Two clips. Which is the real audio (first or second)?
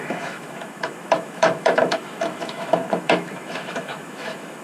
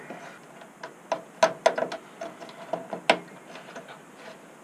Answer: second